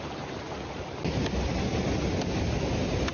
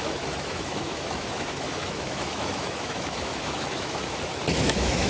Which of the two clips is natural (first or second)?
first